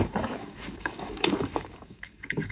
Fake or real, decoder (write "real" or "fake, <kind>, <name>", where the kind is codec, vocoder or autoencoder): fake, codec, DAC